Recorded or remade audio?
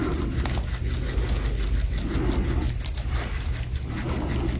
recorded